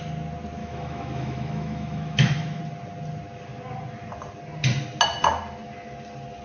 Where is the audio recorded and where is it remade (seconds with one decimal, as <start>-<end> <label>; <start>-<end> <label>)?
0.0-0.6 recorded; 0.6-2.6 remade; 2.6-6.4 recorded